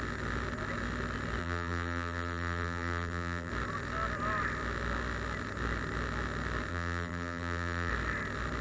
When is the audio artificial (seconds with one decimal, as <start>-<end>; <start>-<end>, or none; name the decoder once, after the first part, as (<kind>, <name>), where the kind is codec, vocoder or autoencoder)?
1.4-3.5 (vocoder, BigVGAN v2); 6.7-7.9